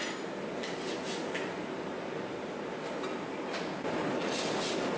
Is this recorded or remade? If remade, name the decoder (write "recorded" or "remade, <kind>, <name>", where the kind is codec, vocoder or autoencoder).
recorded